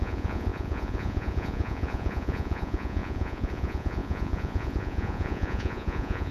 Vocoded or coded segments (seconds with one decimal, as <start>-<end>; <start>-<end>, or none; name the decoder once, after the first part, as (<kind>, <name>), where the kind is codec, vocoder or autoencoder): 0.0-6.3 (vocoder, Vocos)